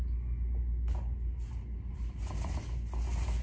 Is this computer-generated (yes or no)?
no